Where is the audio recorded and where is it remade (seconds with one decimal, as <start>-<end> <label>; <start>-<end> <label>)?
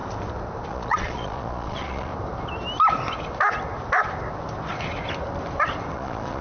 0.0-0.7 recorded; 0.7-2.1 remade; 2.1-5.9 recorded; 5.9-6.4 remade